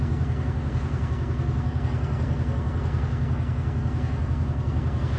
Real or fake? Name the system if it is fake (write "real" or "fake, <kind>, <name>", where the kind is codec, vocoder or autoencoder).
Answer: fake, codec, SNAC